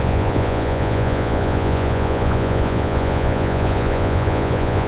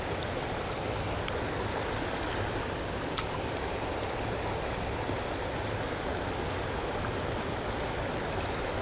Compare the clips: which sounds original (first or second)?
second